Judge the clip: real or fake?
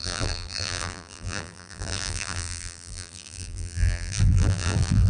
fake